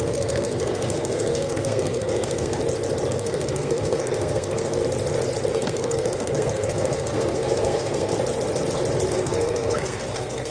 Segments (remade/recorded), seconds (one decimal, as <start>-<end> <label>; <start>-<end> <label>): 0.0-2.6 remade; 2.6-3.1 recorded; 3.1-4.8 remade; 4.8-5.5 recorded; 5.5-8.1 remade; 8.1-9.1 recorded; 9.1-10.5 remade